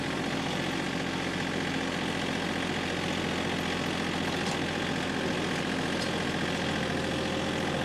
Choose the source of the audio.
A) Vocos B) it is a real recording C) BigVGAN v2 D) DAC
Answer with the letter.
B